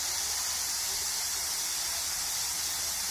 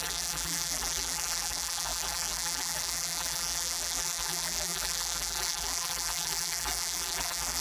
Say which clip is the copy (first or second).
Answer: second